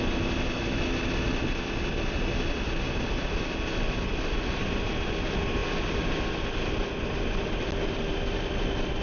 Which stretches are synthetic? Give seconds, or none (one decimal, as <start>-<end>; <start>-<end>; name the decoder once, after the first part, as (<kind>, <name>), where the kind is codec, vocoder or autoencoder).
none